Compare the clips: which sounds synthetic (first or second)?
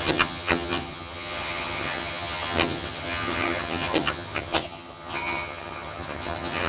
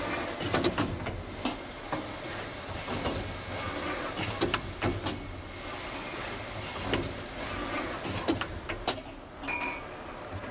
first